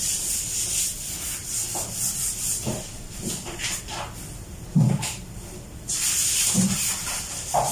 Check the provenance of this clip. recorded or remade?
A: remade